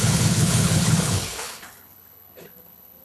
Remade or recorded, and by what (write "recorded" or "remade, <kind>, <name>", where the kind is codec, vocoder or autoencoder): remade, codec, HILCodec